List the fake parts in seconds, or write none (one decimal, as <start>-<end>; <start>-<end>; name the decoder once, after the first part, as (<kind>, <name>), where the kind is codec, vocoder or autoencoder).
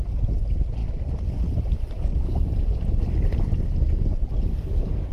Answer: 4.5-5.1 (codec, SNAC)